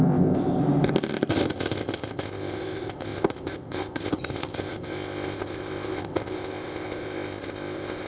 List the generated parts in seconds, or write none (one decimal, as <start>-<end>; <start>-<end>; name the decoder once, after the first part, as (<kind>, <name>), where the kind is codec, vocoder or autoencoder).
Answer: 0.0-0.6 (codec, ZipCodec); 1.3-8.1